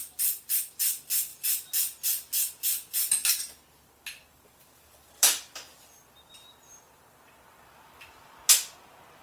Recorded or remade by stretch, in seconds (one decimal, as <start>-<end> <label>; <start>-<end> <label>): 0.0-4.3 recorded; 4.3-5.8 remade; 5.8-9.2 recorded